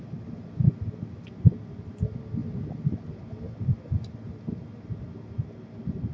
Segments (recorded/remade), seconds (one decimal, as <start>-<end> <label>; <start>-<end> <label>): 0.0-6.1 recorded